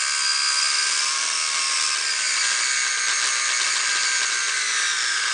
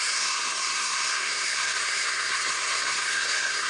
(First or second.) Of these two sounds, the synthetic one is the second